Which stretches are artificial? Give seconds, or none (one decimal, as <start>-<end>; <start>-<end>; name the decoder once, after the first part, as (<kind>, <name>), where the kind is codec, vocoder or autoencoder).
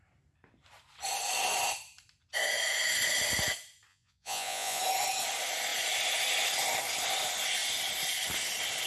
3.9-4.8 (vocoder, Vocos)